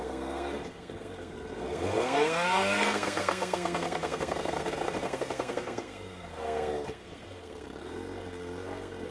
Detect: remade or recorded remade